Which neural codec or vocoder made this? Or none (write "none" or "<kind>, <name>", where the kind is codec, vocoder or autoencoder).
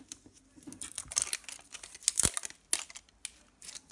none